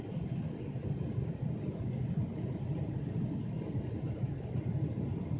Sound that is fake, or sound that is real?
real